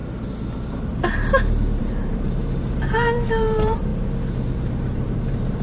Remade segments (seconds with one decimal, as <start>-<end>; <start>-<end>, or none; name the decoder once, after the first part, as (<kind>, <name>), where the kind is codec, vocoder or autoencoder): 1.8-3.9 (vocoder, BigVGAN v2); 4.7-5.6